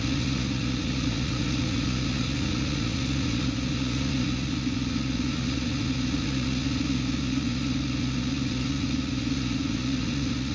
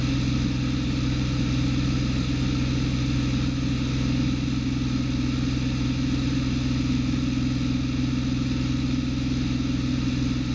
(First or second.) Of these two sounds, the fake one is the first